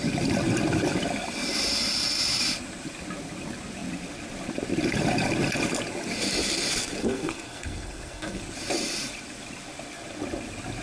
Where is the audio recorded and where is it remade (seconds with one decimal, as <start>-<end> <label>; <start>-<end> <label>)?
0.0-7.0 recorded; 7.0-8.4 remade; 8.4-10.8 recorded